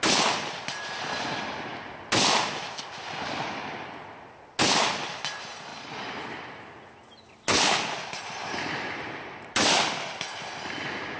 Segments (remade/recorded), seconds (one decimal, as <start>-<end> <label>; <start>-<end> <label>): 0.0-11.2 recorded